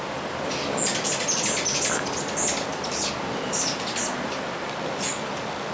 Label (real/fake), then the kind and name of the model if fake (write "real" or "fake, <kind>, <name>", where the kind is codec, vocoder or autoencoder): real